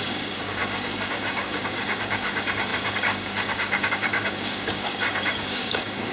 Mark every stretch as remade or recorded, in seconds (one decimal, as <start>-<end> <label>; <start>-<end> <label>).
0.0-6.1 remade